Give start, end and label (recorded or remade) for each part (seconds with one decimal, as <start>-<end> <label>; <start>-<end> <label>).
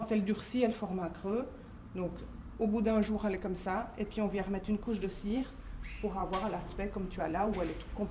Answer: 0.0-6.2 remade; 6.2-7.2 recorded; 7.2-8.1 remade